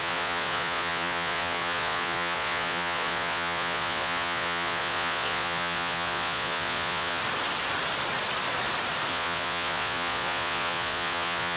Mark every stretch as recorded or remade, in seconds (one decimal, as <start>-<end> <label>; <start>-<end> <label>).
0.0-7.2 remade; 7.2-9.1 recorded; 9.1-11.6 remade

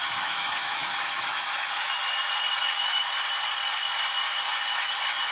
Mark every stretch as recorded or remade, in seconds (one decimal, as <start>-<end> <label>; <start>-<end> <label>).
0.0-2.0 remade; 2.0-2.6 recorded; 2.6-3.0 remade; 3.0-4.4 recorded; 4.4-5.3 remade

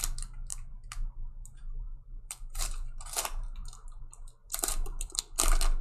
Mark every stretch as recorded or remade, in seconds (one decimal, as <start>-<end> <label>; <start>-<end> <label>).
0.0-0.5 recorded; 0.5-4.0 remade; 4.0-4.4 recorded; 4.4-5.2 remade; 5.2-5.8 recorded

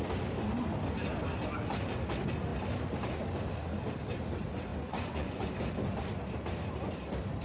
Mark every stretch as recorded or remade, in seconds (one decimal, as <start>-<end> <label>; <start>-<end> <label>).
0.0-4.7 recorded; 4.7-5.5 remade; 5.5-7.4 recorded

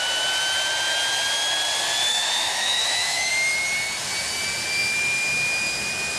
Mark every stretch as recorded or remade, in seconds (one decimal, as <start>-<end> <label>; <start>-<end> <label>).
0.0-2.1 recorded; 2.1-3.3 remade; 3.3-6.2 recorded

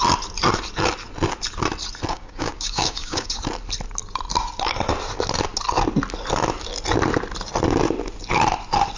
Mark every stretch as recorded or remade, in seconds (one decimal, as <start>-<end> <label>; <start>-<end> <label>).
0.0-2.1 recorded; 2.1-3.4 remade; 3.4-9.0 recorded